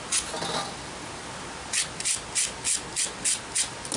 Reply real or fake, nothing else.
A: real